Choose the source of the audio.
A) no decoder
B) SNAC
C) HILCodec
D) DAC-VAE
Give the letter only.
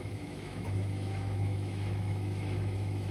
D